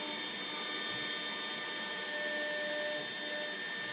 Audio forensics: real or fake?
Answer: real